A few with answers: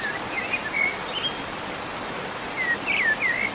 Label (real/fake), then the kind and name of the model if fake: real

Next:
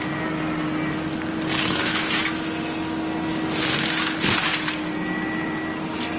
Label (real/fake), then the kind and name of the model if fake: real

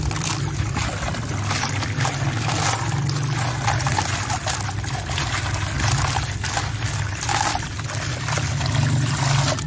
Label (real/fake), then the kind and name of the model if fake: real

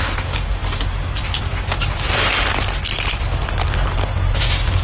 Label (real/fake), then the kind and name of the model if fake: real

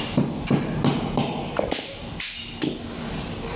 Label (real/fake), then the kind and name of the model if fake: real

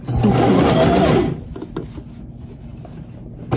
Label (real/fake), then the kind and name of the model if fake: real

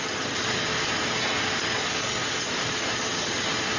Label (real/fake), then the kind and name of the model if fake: real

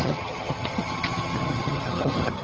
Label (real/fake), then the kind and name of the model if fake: fake, vocoder, HiFi-GAN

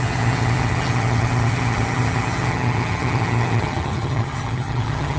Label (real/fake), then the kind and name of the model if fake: fake, vocoder, HiFi-GAN